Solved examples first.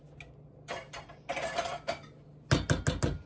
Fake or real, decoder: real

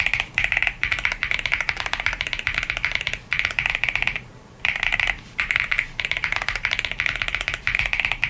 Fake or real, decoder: fake, vocoder, BigVGAN v2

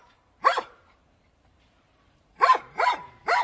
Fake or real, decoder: fake, vocoder, BigVGAN v2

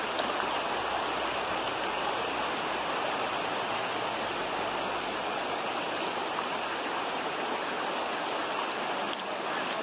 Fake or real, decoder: real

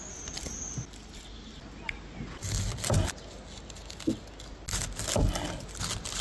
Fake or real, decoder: real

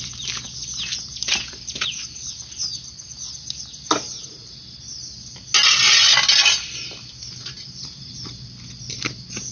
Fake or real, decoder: real